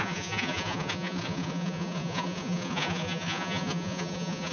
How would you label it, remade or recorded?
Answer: remade